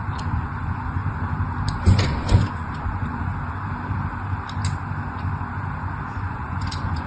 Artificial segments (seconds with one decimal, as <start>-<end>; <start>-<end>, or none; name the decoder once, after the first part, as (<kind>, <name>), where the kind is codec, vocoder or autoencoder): 0.0-1.0 (vocoder, Vocos); 1.7-3.3; 6.1-7.1